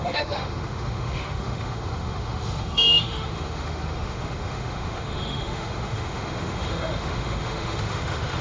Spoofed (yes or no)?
yes